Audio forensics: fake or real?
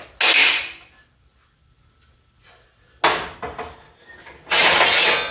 real